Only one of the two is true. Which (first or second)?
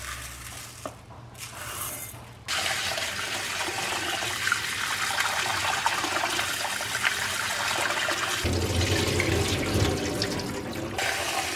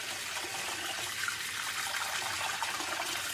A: first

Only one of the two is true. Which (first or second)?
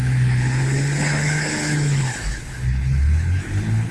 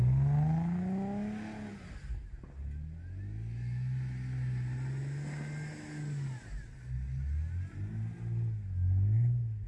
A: second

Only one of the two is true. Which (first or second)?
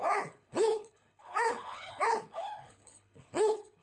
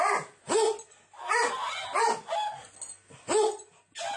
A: second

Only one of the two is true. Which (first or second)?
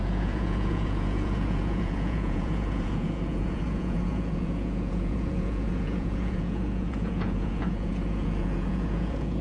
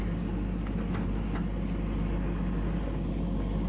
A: second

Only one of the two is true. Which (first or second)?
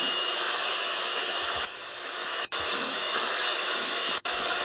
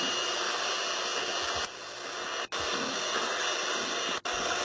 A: second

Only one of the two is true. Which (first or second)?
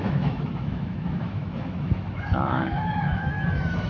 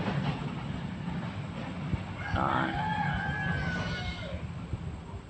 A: second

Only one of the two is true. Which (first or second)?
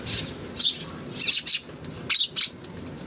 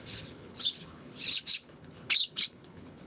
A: first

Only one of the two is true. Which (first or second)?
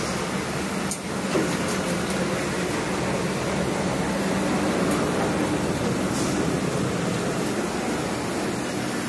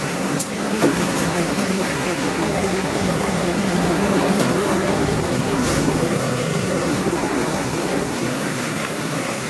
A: first